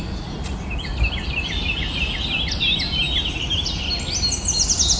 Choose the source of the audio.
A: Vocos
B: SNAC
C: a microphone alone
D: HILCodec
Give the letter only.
C